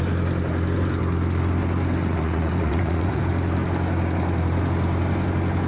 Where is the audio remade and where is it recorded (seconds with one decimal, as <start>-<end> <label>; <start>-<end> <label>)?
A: 0.0-2.0 recorded; 2.0-3.2 remade; 3.2-5.7 recorded